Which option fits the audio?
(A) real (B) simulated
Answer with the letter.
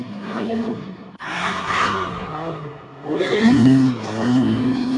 B